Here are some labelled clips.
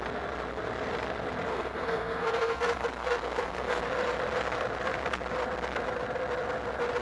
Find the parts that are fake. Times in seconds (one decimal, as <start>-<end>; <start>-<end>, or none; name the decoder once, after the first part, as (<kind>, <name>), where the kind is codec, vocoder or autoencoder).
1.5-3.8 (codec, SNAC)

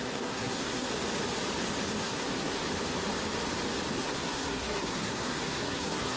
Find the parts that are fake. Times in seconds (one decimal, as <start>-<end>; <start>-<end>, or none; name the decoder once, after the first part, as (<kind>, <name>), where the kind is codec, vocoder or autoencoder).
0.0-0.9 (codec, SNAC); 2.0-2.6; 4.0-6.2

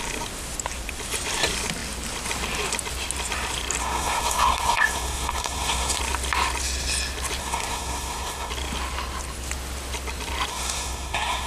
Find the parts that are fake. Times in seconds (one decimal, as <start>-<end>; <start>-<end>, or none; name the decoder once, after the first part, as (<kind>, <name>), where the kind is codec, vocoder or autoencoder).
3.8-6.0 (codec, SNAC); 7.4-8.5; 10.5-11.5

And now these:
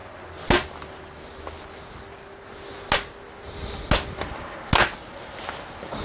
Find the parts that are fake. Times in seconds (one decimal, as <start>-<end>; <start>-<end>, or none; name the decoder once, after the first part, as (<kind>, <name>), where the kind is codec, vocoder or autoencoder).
none